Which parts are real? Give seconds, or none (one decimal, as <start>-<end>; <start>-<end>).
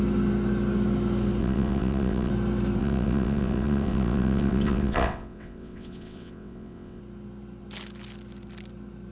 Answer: 0.0-1.4; 2.3-2.8; 7.0-9.1